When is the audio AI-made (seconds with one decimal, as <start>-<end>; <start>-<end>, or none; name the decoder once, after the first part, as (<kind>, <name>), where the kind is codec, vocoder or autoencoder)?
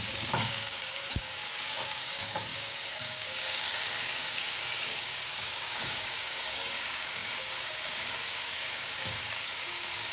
0.0-10.1 (codec, DAC)